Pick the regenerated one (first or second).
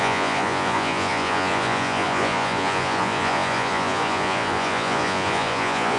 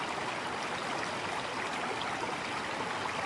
first